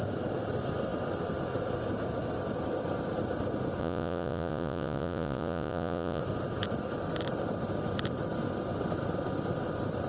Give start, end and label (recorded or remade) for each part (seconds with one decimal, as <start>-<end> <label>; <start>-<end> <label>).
0.0-3.8 recorded; 3.8-6.2 remade; 6.2-10.1 recorded